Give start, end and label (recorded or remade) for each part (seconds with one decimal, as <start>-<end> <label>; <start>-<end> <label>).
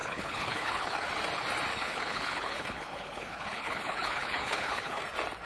0.0-1.1 remade; 1.1-1.7 recorded; 1.7-5.0 remade; 5.0-5.5 recorded